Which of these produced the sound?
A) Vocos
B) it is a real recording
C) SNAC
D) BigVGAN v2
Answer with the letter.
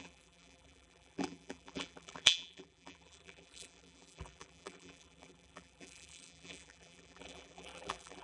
D